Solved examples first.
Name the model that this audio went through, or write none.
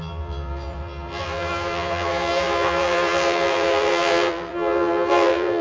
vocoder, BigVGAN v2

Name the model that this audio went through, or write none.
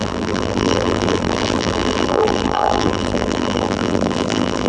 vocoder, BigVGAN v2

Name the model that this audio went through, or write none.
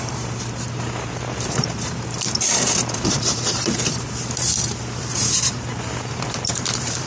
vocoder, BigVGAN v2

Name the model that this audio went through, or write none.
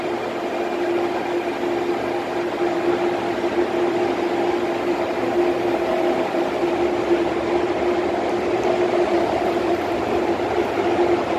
none